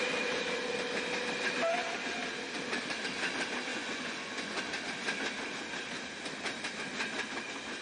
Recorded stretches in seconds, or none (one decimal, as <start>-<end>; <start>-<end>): 0.0-3.7; 4.6-7.8